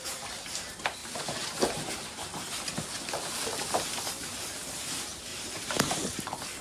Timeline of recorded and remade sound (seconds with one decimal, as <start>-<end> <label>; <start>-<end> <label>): 0.0-1.0 recorded; 1.0-2.5 remade; 2.5-5.3 recorded; 5.3-5.9 remade; 5.9-6.6 recorded